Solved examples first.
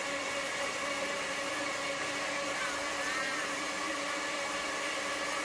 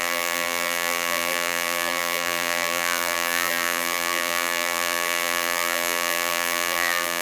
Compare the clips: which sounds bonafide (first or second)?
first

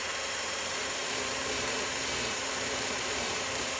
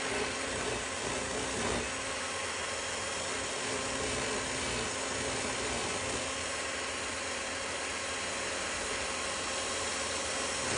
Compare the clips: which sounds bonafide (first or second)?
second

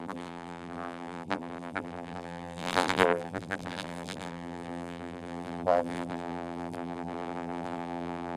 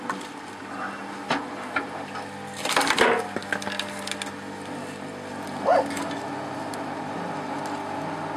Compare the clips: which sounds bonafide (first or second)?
second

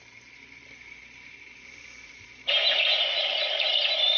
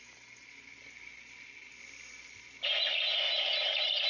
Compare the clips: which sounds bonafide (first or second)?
second